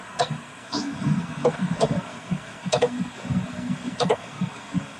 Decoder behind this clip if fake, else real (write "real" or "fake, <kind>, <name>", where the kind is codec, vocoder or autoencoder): fake, codec, SNAC